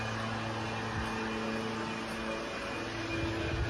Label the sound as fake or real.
real